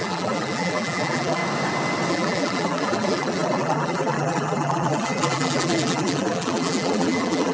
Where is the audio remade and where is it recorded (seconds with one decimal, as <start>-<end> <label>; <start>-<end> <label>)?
0.0-1.4 remade; 1.4-2.1 recorded; 2.1-7.5 remade